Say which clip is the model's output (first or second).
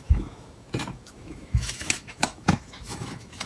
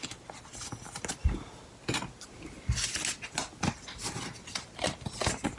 first